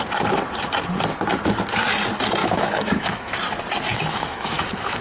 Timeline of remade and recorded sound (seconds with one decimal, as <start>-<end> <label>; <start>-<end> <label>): 0.0-2.4 recorded; 2.4-3.4 remade; 3.4-3.9 recorded; 3.9-5.0 remade